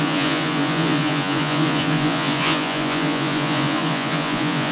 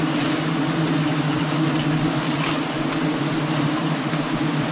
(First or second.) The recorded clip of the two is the second